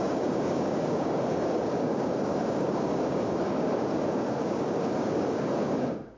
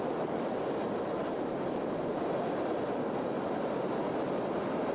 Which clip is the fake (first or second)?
first